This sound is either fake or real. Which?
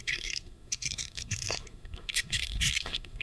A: fake